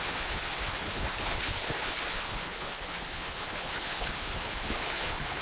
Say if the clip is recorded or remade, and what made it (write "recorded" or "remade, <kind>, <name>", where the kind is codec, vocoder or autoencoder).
remade, codec, HILCodec